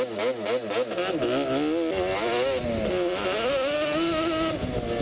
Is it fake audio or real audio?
real